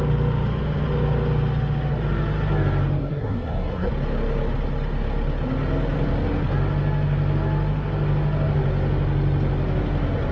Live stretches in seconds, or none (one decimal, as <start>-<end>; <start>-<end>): 0.0-3.0; 3.9-10.3